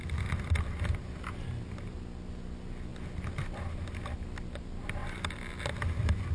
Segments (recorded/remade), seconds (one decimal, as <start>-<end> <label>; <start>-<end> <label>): 0.0-6.3 recorded